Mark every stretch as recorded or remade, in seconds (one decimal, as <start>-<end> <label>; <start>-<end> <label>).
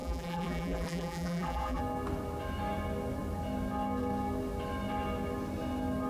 0.0-1.8 remade; 1.8-6.1 recorded